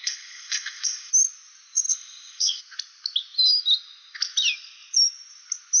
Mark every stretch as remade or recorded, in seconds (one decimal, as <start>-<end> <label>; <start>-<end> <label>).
0.0-1.1 remade; 1.1-1.9 recorded; 1.9-2.6 remade; 2.6-5.8 recorded